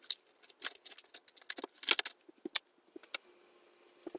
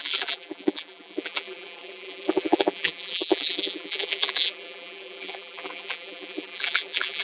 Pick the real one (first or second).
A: first